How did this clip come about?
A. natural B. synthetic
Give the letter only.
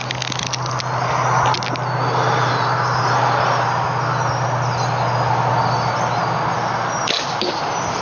A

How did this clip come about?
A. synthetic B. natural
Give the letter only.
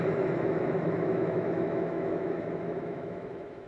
A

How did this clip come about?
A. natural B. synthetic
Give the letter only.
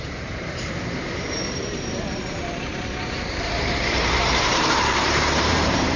B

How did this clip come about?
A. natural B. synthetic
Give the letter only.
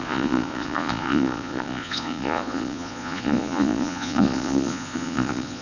B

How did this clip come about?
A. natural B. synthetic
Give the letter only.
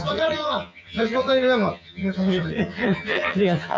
B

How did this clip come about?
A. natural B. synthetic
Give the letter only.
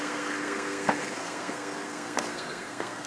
B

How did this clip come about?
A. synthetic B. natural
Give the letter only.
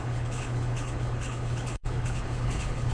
A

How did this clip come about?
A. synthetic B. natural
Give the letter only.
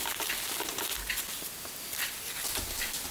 B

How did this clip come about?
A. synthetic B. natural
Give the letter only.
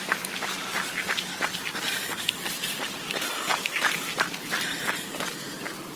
B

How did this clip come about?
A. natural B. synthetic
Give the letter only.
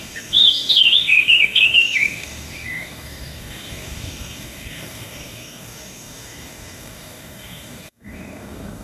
B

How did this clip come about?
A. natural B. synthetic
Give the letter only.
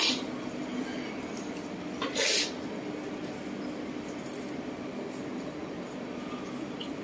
A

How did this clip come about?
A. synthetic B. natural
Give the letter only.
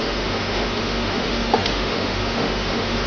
A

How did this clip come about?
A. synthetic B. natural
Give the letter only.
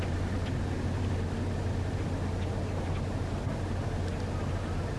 B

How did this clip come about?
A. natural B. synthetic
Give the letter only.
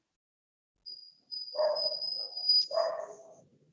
A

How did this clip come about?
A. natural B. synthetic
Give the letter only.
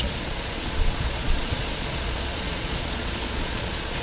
B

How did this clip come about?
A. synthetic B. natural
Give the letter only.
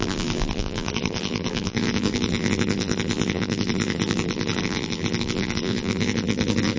A